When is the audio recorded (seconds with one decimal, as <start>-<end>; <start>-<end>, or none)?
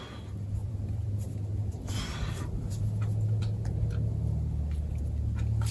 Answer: 0.0-0.6; 1.2-1.6; 3.5-5.7